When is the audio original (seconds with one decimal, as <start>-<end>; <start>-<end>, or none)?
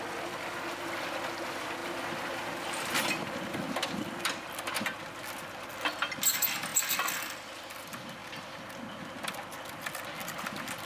0.0-10.8